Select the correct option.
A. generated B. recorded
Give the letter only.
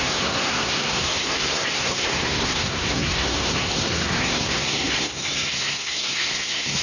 A